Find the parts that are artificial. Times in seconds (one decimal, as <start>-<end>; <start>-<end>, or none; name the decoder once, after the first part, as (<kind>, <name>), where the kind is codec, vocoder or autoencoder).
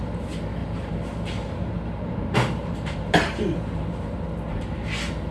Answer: 0.6-3.8 (vocoder, BigVGAN v2)